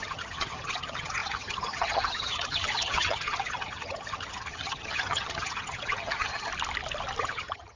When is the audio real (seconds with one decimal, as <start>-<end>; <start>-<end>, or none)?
6.5-7.2